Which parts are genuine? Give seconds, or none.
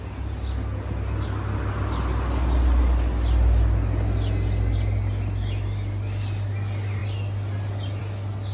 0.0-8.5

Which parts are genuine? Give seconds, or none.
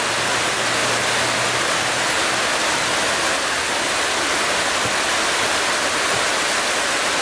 0.0-7.2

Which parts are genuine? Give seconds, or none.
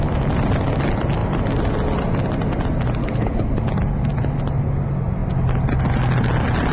0.0-3.0; 3.6-6.7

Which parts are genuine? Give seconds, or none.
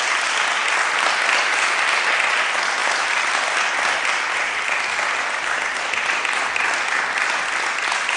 0.0-8.2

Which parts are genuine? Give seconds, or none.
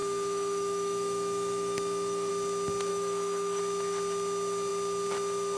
2.3-2.9; 3.6-5.6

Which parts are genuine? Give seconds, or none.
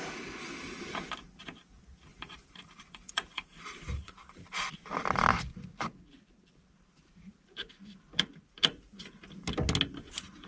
0.0-2.1; 4.7-10.5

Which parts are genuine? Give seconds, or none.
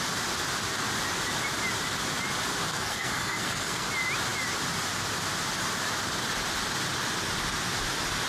0.0-2.7; 3.9-8.3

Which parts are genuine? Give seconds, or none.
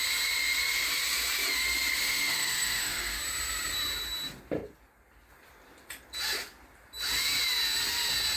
0.0-2.0; 3.2-8.4